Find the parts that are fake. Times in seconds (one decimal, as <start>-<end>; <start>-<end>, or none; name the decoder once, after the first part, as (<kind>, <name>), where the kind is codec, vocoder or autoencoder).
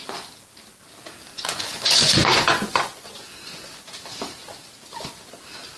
1.3-3.8 (vocoder, Vocos)